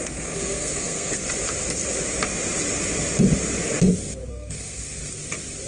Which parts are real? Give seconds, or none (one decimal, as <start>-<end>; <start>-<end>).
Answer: 1.2-4.3; 5.0-5.7